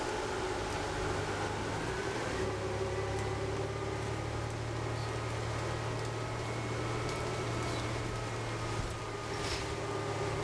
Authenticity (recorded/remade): recorded